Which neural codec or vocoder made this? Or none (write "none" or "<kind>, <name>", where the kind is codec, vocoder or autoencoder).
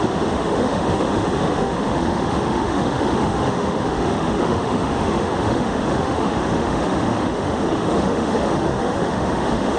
autoencoder, DAC-VAE